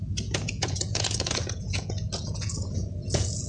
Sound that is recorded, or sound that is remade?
remade